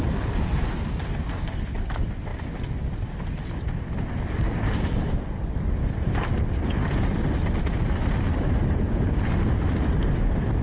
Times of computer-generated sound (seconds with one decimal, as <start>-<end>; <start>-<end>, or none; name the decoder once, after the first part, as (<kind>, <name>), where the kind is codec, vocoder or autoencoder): none